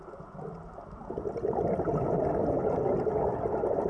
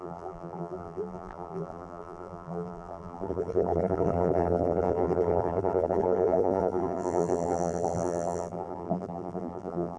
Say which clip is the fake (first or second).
second